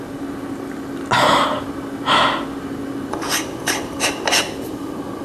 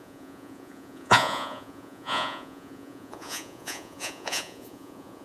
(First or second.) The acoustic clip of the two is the first